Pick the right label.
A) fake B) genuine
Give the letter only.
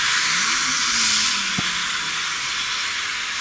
B